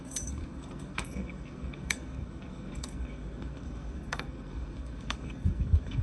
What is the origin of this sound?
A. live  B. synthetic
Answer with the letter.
B